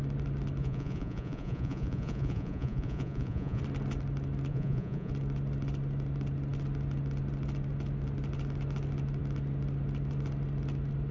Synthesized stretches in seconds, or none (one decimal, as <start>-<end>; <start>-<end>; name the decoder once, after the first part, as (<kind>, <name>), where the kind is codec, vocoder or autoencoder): 0.6-3.6 (vocoder, Vocos); 4.5-5.1

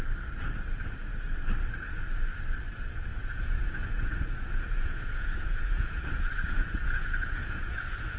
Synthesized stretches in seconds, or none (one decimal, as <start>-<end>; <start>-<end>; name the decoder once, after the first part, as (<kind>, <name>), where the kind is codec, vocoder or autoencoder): 3.1-8.2 (vocoder, Vocos)